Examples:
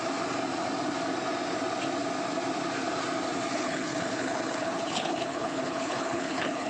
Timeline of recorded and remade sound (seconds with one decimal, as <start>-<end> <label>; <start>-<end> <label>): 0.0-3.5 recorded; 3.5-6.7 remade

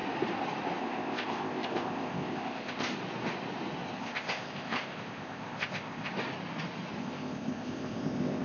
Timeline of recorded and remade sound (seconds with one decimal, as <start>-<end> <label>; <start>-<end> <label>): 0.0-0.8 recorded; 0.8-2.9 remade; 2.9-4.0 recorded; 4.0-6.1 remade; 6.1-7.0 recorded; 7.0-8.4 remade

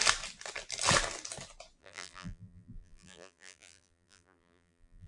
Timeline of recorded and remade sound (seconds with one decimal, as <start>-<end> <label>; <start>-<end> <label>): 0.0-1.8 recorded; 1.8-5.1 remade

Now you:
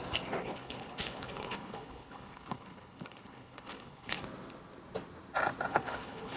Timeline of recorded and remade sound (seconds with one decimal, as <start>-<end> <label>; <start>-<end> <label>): 0.0-0.4 recorded; 0.4-4.2 remade; 4.2-5.7 recorded; 5.7-6.4 remade

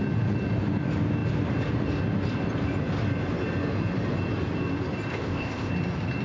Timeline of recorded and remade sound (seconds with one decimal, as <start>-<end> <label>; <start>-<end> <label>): 0.0-5.1 recorded; 5.1-5.7 remade; 5.7-6.2 recorded